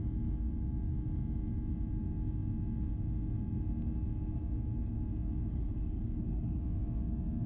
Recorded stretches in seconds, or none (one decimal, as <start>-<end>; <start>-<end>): 0.0-5.5; 6.6-7.5